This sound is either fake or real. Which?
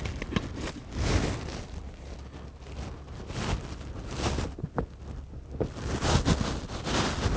real